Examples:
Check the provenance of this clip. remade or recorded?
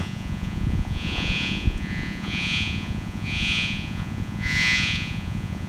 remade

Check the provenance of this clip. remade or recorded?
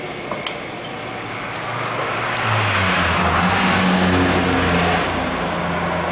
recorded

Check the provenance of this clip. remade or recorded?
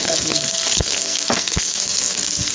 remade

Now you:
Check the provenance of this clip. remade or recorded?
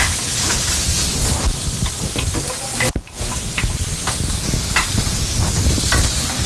recorded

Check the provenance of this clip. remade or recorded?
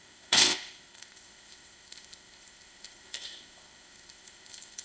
remade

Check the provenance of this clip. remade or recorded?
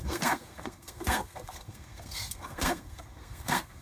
remade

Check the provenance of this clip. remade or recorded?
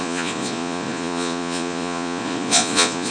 remade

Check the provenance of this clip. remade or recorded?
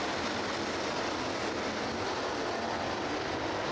remade